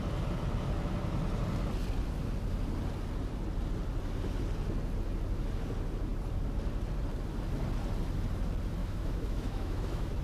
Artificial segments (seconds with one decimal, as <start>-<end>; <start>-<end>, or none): 8.8-10.2